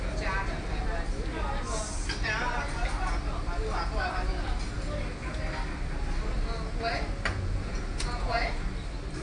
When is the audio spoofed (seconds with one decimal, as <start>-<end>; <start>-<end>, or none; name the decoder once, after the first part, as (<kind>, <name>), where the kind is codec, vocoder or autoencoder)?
7.3-8.5 (vocoder, Vocos)